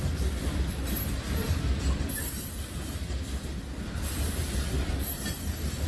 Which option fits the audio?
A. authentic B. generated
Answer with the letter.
A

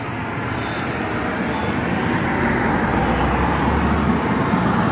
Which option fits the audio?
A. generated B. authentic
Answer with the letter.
B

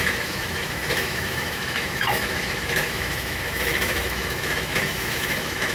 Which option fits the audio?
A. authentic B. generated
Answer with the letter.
B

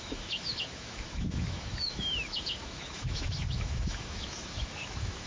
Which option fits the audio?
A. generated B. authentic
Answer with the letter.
A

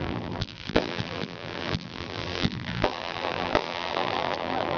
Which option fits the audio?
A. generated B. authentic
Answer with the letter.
A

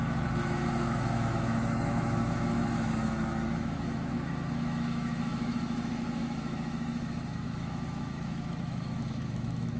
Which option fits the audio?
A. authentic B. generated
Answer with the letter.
B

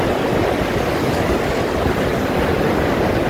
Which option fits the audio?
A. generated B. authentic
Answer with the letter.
B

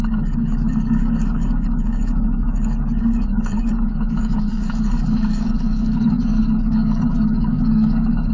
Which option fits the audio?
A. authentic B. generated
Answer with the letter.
B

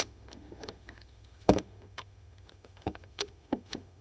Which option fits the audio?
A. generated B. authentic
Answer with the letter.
A